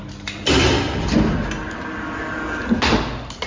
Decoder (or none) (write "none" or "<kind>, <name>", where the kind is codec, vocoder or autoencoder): none